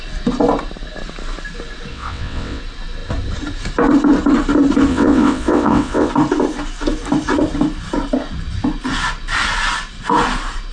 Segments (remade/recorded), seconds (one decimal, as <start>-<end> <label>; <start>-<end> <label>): 0.0-1.9 recorded; 1.9-2.6 remade; 2.6-4.9 recorded; 4.9-6.1 remade; 6.1-10.7 recorded